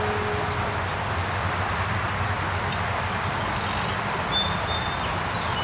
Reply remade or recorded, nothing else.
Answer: recorded